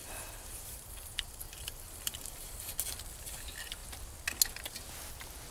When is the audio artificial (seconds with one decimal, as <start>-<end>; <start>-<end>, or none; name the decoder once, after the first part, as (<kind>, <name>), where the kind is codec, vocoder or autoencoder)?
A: 0.0-2.7 (vocoder, BigVGAN v2)